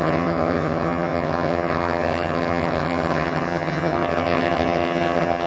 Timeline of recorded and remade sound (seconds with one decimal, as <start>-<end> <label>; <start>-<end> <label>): 0.0-5.5 remade